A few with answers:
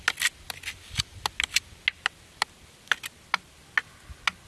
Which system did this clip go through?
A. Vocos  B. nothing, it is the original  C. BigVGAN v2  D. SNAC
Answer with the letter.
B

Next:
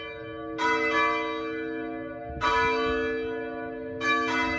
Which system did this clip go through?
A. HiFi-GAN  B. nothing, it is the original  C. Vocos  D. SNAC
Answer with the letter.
B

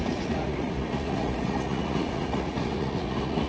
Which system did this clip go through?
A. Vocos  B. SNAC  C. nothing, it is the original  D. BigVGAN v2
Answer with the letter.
A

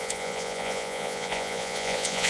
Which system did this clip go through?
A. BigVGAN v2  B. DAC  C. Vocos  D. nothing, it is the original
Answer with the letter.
C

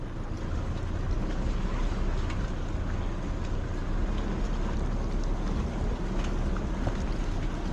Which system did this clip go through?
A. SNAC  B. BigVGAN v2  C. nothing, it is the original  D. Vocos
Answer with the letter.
C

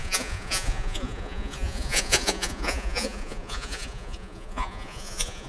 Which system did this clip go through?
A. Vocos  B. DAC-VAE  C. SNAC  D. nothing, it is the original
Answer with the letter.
A